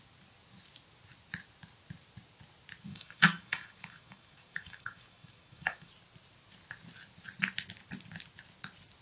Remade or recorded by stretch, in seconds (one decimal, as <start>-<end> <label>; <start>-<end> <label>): 0.0-2.9 recorded; 2.9-5.9 remade; 5.9-9.0 recorded